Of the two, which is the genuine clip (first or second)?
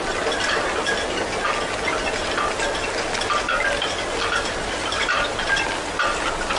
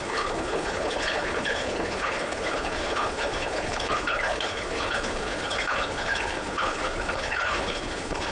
first